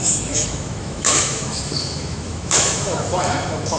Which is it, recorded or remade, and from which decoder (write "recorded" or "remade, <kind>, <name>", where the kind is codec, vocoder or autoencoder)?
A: remade, autoencoder, DAC-VAE